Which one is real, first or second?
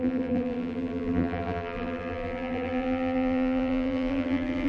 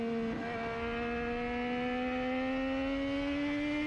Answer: second